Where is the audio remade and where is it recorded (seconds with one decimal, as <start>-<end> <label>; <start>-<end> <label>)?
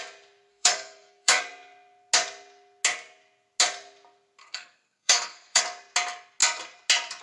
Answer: 0.0-0.5 recorded; 0.5-1.4 remade; 1.4-4.4 recorded; 4.4-5.6 remade; 5.6-7.2 recorded